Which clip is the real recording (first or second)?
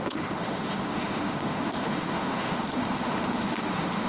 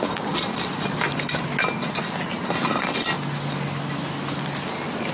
second